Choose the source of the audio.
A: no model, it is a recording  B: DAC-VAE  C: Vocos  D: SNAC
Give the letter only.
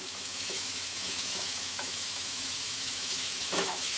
B